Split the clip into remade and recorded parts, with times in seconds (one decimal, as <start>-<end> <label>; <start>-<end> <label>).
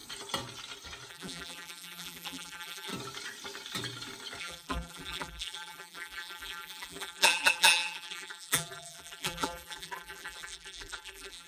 0.0-1.1 recorded; 1.1-2.9 remade; 2.9-4.4 recorded; 4.4-11.5 remade